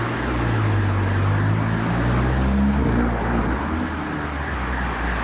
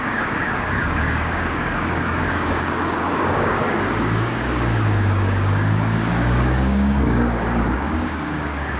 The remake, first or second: second